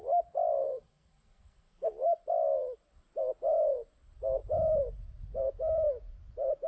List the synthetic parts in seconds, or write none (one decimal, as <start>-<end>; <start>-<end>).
0.6-1.9